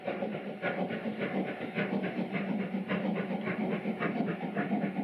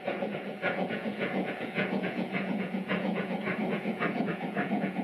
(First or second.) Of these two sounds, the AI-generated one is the second